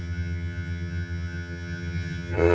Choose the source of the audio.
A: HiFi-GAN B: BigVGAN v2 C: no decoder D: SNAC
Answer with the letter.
A